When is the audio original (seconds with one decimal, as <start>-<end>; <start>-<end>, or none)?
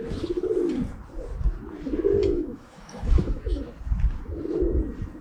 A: 0.0-2.2; 3.6-5.2